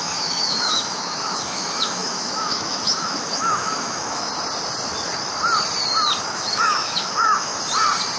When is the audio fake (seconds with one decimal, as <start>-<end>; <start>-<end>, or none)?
0.0-4.3; 6.3-7.5

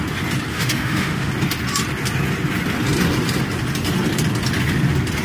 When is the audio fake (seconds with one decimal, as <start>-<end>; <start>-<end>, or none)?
0.5-1.3

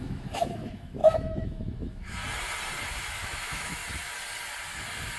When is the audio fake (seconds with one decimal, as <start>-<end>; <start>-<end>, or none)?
0.0-2.2; 2.9-3.8